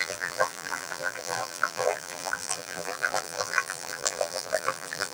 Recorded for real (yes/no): no